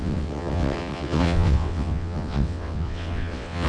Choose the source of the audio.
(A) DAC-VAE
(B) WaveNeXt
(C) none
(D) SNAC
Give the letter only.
B